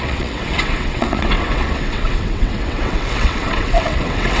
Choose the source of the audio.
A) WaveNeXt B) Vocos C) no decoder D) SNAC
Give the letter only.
A